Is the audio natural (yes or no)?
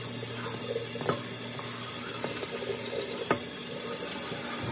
yes